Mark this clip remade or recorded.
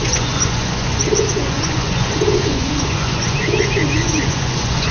remade